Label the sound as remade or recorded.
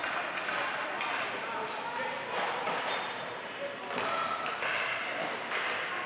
recorded